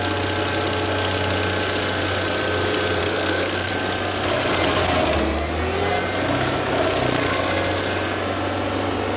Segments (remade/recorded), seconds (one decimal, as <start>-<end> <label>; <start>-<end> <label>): 0.0-3.0 recorded; 3.0-3.7 remade; 3.7-9.2 recorded